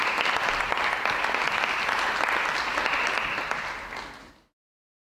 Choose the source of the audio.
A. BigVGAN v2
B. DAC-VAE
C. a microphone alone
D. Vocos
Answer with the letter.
C